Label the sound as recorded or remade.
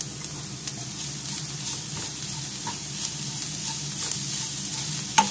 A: recorded